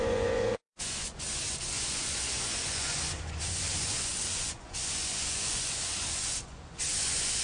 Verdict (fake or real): fake